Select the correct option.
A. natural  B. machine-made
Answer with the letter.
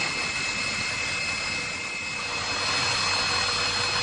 A